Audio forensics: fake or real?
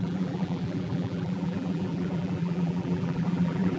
fake